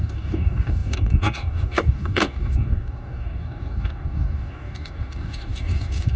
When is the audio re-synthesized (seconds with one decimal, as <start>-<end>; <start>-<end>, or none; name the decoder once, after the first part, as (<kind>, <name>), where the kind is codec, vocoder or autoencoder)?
0.0-6.2 (codec, DAC)